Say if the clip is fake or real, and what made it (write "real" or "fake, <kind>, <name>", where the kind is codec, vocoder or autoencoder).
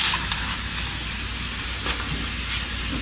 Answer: real